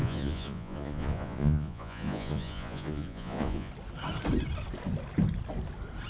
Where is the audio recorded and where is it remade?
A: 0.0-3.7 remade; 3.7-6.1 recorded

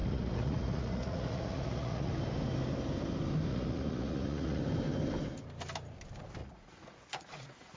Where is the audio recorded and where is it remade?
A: 0.0-2.1 remade; 2.1-3.5 recorded; 3.5-4.6 remade; 4.6-6.4 recorded; 6.4-7.8 remade

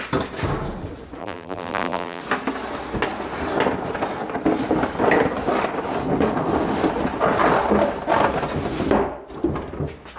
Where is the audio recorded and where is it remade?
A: 0.0-1.2 recorded; 1.2-2.2 remade; 2.2-10.2 recorded

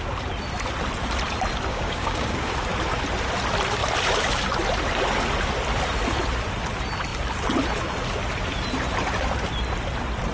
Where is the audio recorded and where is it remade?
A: 0.0-1.7 recorded; 1.7-2.5 remade; 2.5-10.3 recorded

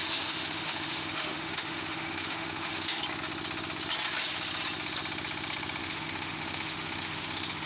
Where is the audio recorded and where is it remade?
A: 0.0-3.0 remade; 3.0-5.8 recorded; 5.8-7.7 remade

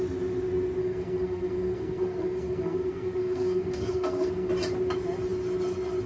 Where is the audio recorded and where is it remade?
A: 0.0-0.8 recorded; 0.8-4.5 remade; 4.5-6.1 recorded